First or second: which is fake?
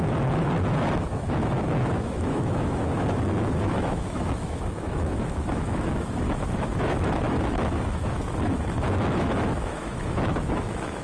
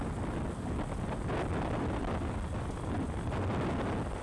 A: first